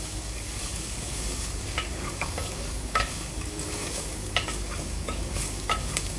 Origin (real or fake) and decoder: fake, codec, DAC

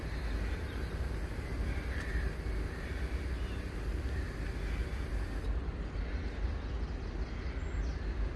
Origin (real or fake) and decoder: real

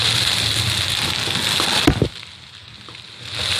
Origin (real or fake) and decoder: real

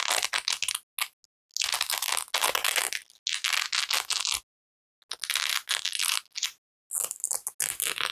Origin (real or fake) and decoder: real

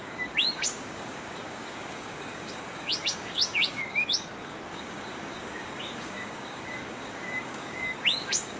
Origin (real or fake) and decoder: fake, codec, DAC